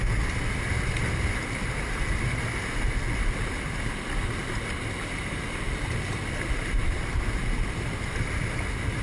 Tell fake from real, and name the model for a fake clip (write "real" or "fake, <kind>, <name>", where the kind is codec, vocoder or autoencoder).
real